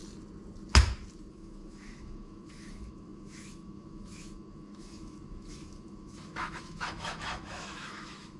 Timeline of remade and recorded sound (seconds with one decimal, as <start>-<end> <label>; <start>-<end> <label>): 0.0-1.3 recorded; 1.3-8.4 remade